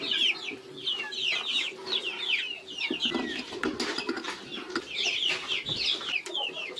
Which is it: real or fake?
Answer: real